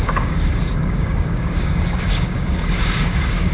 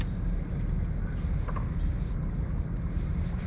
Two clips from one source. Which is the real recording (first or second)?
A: second